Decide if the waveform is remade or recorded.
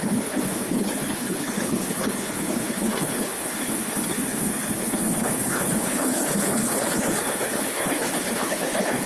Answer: remade